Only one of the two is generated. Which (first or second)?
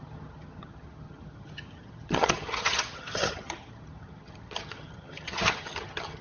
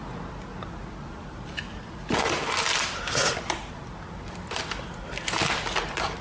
first